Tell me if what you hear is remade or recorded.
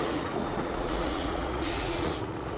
remade